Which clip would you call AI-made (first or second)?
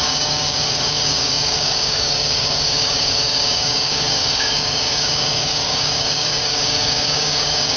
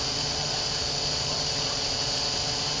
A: first